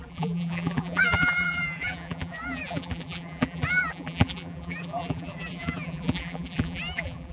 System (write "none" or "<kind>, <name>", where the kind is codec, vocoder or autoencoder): vocoder, BigVGAN v2